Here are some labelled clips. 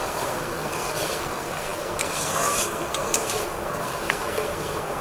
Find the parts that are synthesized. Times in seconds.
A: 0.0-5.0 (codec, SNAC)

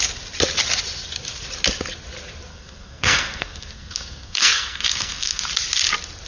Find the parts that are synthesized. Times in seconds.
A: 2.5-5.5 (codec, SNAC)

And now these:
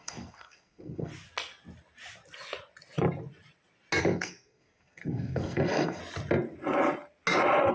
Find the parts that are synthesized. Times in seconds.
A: 0.0-1.1 (codec, SNAC); 4.0-6.0

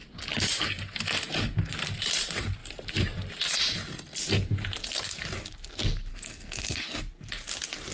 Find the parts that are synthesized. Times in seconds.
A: 6.1-7.0 (codec, SNAC)